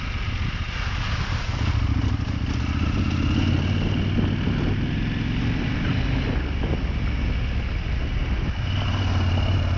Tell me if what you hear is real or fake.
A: real